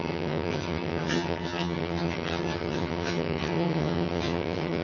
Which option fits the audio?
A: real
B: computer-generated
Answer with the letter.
B